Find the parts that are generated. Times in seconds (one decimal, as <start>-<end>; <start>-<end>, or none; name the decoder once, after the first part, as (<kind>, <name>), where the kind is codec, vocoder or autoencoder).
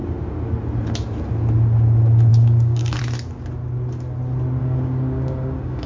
2.3-3.0 (codec, DAC); 4.6-5.9